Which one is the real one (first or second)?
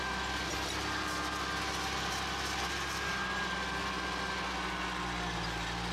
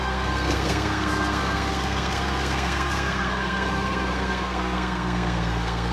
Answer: first